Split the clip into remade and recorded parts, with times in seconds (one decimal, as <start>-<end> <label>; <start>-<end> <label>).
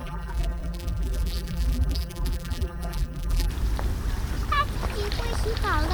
0.0-3.5 remade; 3.5-5.9 recorded